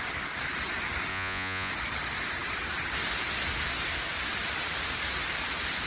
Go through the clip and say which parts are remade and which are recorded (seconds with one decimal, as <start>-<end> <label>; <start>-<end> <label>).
0.0-1.1 recorded; 1.1-1.7 remade; 1.7-5.9 recorded